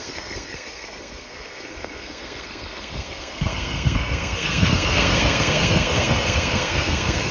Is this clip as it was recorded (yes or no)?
no